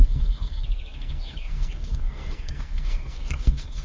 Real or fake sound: fake